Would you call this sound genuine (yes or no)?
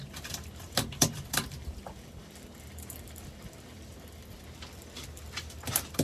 no